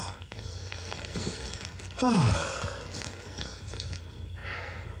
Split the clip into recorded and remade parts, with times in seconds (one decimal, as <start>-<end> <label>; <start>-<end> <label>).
0.0-5.0 remade